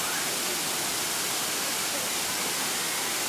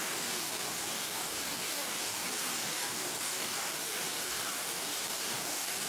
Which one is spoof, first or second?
second